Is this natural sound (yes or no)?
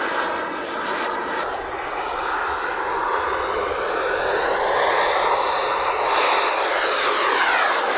yes